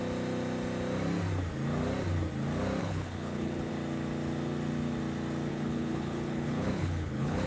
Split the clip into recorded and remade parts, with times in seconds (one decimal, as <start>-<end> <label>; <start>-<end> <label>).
0.0-2.8 recorded; 2.8-3.7 remade; 3.7-5.5 recorded; 5.5-7.5 remade